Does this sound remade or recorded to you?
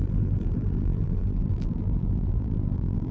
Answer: remade